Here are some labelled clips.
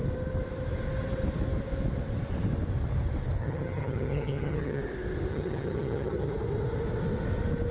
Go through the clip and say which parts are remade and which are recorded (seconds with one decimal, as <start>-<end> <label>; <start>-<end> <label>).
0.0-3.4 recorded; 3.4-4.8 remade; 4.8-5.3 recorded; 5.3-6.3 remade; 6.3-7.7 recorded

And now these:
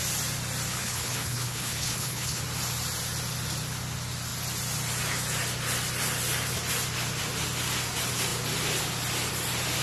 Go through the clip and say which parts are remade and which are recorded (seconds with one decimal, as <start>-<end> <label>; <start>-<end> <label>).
0.0-0.7 recorded; 0.7-2.4 remade; 2.4-9.8 recorded

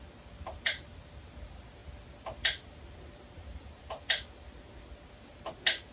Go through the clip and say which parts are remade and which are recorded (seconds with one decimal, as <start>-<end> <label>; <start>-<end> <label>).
0.0-5.9 recorded

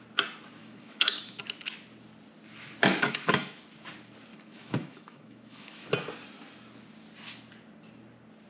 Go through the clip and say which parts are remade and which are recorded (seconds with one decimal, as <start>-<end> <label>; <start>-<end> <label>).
0.0-0.6 recorded; 0.6-1.4 remade; 1.4-2.9 recorded; 2.9-3.6 remade; 3.6-4.3 recorded; 4.3-5.9 remade; 5.9-8.5 recorded

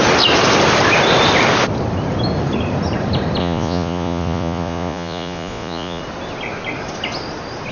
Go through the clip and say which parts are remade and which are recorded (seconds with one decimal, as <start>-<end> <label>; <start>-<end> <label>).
0.0-3.4 recorded; 3.4-6.0 remade; 6.0-7.7 recorded

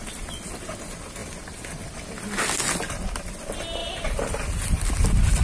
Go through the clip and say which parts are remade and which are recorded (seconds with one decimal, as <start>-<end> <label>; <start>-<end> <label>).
0.0-5.4 recorded

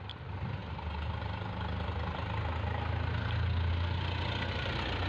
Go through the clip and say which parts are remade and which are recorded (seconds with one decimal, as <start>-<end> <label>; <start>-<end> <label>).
0.0-5.1 recorded